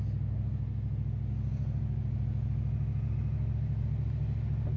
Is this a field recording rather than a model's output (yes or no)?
yes